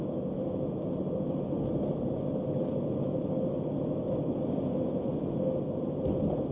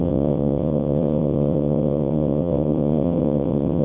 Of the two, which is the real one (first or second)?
first